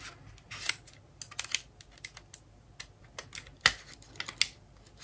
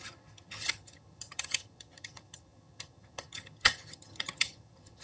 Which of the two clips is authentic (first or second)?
first